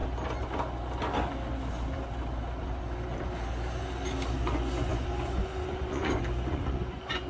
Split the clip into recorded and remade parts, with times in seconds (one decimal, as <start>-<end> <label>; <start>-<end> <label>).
0.0-4.3 recorded; 4.3-7.3 remade